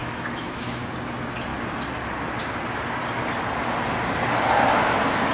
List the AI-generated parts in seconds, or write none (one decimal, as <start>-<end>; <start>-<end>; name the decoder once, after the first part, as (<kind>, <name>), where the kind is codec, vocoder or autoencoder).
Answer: 0.0-0.9 (autoencoder, DAC-VAE)